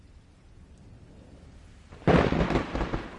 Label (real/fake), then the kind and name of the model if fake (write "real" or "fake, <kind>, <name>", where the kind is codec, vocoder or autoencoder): fake, vocoder, BigVGAN v2